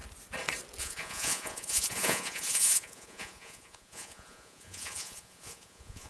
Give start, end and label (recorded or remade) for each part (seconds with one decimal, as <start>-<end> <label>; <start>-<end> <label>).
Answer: 0.0-0.8 recorded; 0.8-6.1 remade